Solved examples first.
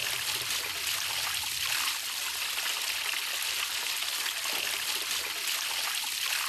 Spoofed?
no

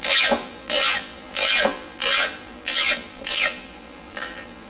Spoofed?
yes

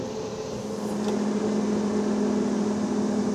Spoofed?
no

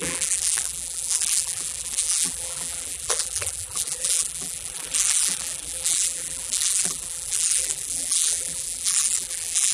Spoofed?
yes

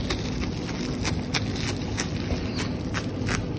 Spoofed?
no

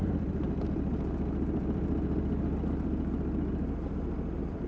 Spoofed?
yes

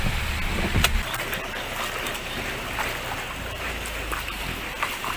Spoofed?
no